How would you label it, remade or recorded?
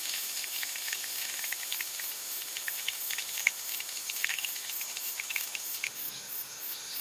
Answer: remade